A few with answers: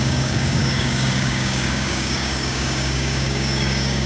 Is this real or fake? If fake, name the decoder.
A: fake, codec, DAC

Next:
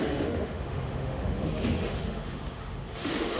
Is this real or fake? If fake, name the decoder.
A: fake, autoencoder, DAC-VAE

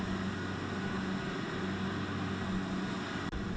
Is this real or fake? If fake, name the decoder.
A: real